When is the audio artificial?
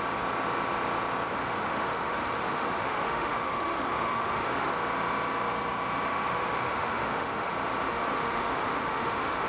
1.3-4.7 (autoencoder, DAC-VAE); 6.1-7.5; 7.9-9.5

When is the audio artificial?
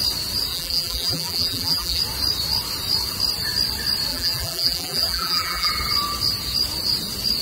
0.5-2.0 (vocoder, BigVGAN v2); 4.1-5.7